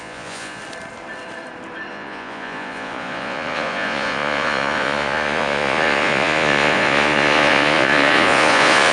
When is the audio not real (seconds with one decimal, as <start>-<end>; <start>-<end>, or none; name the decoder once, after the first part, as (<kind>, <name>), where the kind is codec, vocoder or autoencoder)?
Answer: 0.0-0.6 (vocoder, Vocos); 1.9-8.9